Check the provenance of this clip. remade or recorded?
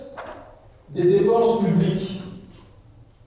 recorded